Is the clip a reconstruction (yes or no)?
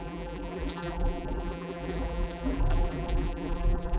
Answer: yes